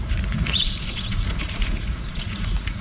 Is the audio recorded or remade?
remade